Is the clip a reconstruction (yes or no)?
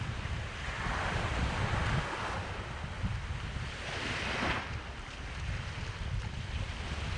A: no